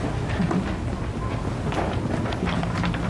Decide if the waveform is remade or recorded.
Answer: recorded